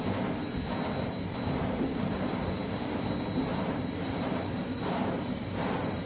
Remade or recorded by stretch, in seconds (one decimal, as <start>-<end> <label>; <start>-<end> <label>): 0.0-1.9 recorded; 1.9-2.6 remade; 2.6-3.5 recorded; 3.5-6.1 remade